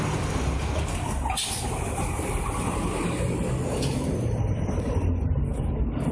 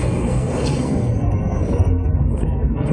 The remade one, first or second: second